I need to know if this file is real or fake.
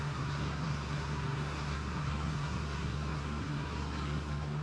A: fake